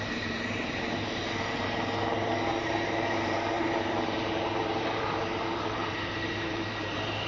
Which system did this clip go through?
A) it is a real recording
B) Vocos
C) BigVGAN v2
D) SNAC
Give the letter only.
C